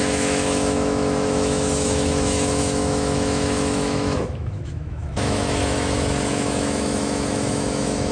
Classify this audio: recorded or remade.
remade